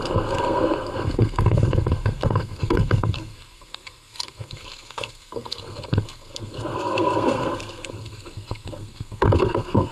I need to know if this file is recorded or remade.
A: remade